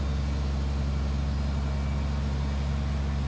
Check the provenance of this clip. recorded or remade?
recorded